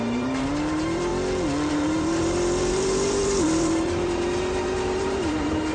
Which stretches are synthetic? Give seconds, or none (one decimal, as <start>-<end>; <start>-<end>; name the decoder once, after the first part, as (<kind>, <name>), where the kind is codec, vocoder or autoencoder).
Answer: 0.0-1.1 (vocoder, BigVGAN v2); 1.7-5.7